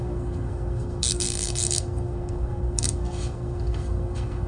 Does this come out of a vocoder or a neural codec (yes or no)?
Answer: yes